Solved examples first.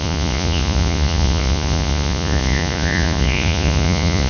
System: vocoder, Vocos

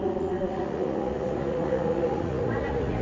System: vocoder, Vocos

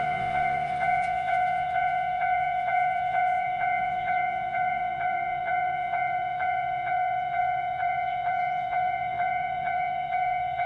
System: vocoder, Vocos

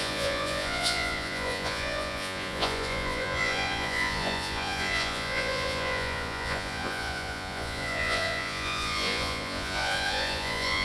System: vocoder, Vocos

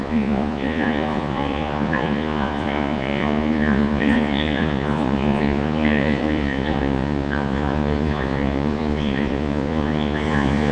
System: vocoder, Vocos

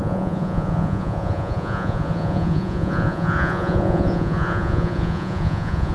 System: vocoder, Vocos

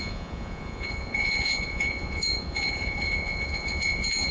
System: vocoder, Vocos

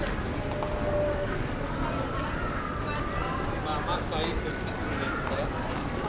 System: none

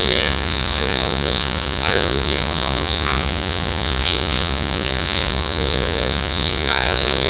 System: vocoder, Vocos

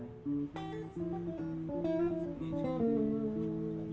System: none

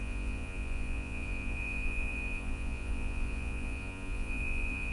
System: vocoder, Vocos